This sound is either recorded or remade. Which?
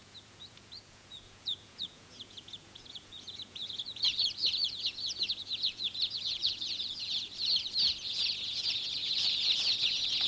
remade